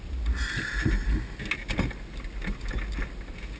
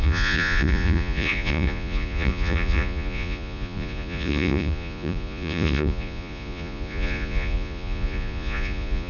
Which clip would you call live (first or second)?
first